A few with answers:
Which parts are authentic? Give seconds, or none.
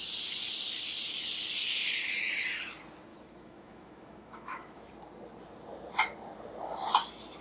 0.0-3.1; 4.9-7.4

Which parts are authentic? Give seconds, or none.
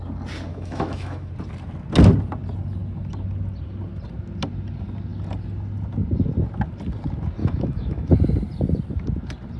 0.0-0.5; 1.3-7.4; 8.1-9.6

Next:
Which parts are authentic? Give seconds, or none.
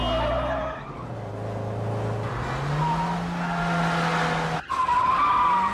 0.0-5.7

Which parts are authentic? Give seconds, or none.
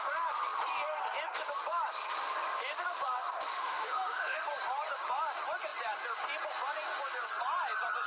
0.0-3.5; 4.5-8.1